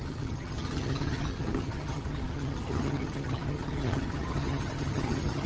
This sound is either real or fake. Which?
fake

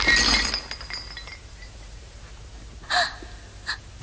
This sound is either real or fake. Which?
real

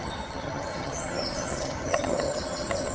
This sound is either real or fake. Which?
fake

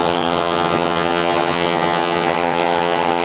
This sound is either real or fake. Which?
fake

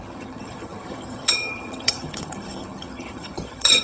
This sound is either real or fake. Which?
fake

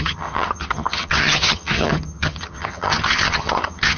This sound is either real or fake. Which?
fake